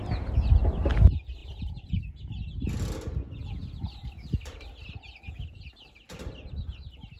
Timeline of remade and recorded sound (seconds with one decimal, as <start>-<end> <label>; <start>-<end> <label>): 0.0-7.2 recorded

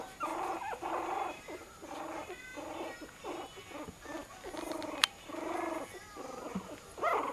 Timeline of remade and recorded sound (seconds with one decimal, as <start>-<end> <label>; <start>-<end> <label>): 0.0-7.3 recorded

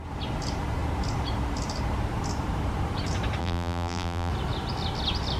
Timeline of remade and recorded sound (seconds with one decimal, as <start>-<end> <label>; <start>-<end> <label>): 0.0-3.4 recorded; 3.4-4.3 remade; 4.3-5.4 recorded

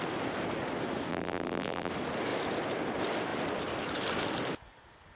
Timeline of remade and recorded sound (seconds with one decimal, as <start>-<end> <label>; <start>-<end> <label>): 0.0-1.1 recorded; 1.1-1.9 remade; 1.9-5.2 recorded

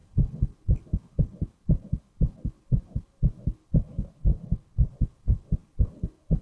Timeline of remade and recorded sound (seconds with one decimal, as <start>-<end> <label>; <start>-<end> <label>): 0.0-6.4 recorded